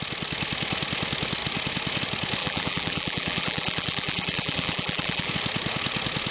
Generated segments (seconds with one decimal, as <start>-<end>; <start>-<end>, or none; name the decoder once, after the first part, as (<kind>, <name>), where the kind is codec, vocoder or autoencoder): 2.4-5.3 (vocoder, BigVGAN v2)